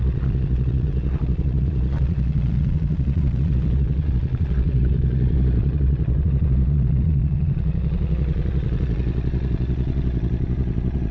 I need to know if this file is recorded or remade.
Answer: remade